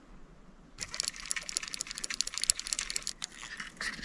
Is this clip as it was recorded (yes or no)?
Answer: yes